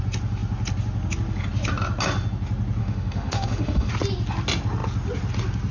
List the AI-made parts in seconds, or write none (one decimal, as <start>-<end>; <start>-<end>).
2.8-3.9